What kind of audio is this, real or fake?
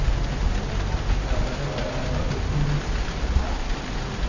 real